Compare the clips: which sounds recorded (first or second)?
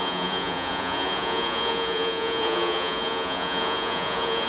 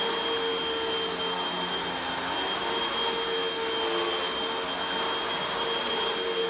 second